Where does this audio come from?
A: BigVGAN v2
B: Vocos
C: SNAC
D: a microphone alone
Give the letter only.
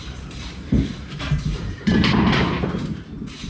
A